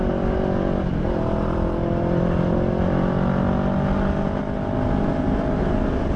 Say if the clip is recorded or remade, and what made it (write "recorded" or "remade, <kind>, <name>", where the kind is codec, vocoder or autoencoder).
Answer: recorded